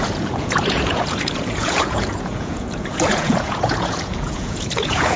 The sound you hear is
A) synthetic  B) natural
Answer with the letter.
A